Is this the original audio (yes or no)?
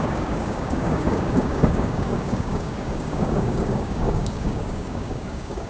no